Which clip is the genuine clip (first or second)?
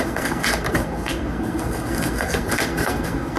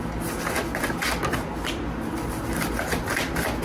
second